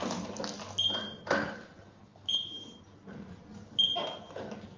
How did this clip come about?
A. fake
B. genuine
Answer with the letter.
B